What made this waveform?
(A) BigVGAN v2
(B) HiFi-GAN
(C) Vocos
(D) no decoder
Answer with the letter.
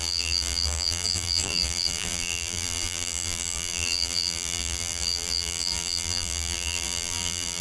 A